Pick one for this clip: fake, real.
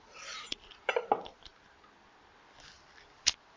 real